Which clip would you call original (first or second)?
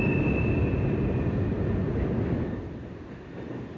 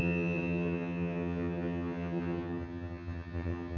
first